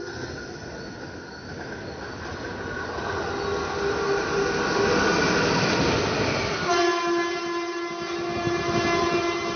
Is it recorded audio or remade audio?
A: recorded